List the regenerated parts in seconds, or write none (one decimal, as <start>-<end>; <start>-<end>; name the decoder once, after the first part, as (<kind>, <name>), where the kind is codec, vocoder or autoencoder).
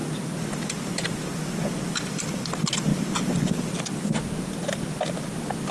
none